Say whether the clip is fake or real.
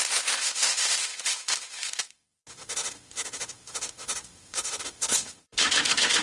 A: fake